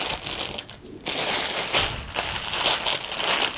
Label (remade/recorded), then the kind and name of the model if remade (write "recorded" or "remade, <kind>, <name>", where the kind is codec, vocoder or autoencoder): recorded